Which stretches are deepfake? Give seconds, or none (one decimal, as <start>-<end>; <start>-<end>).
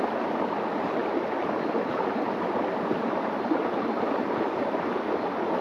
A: none